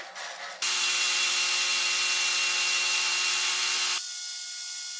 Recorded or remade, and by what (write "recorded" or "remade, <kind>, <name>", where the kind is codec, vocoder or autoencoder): recorded